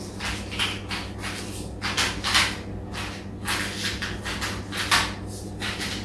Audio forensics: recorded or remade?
recorded